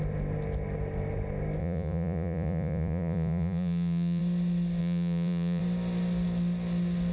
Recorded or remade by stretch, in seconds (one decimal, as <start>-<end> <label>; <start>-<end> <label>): 0.0-1.6 recorded; 1.6-4.2 remade; 4.2-4.8 recorded; 4.8-5.6 remade; 5.6-7.1 recorded